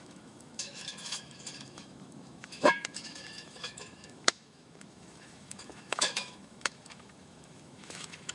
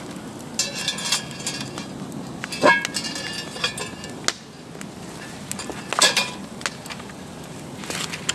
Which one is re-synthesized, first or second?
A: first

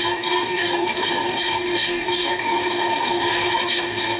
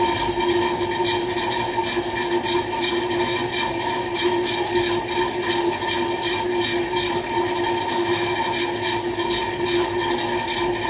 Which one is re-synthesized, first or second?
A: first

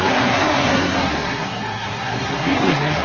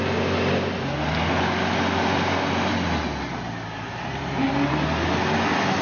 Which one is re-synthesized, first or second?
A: first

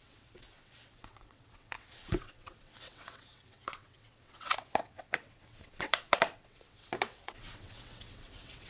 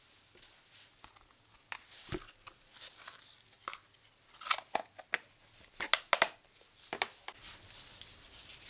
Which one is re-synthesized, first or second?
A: first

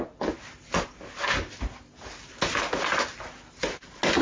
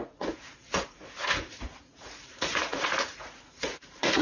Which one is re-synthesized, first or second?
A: second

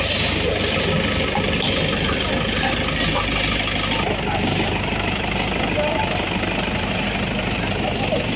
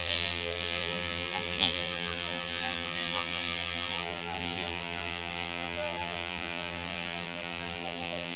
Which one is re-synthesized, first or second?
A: second